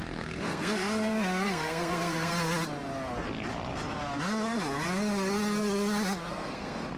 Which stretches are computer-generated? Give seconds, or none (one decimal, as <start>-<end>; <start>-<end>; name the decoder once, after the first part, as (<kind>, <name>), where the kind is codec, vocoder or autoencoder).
0.0-2.3 (codec, SNAC); 6.3-7.0